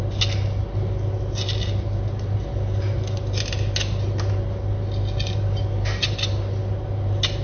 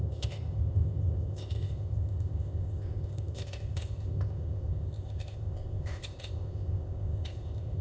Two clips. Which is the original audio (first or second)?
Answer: first